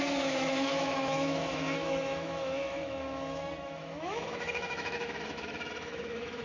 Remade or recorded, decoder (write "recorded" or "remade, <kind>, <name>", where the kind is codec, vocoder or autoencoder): remade, autoencoder, DAC-VAE